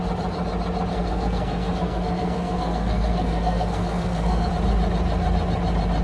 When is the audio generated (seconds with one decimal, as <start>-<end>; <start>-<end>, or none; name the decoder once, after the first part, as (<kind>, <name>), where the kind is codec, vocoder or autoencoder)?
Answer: 0.9-4.5 (codec, SNAC)